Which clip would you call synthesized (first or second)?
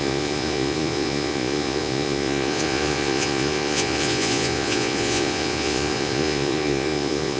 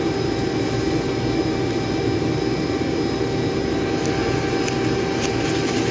first